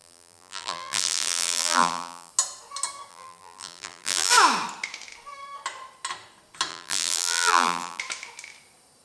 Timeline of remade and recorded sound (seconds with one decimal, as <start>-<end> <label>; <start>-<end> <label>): 0.0-2.3 remade; 2.3-3.1 recorded; 3.1-4.3 remade; 4.3-6.7 recorded; 6.7-8.0 remade; 8.0-9.0 recorded